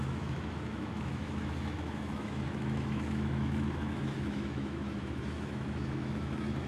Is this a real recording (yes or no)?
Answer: no